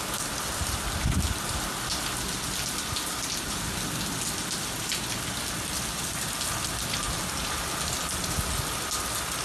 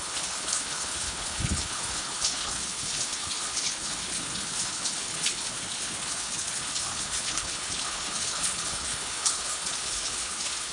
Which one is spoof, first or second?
second